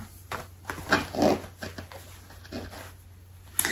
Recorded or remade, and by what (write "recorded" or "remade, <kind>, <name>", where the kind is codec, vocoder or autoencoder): recorded